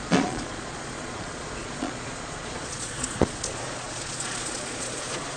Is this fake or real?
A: fake